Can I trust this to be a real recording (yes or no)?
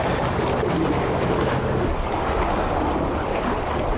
yes